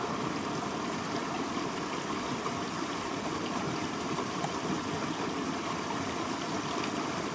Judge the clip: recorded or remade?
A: recorded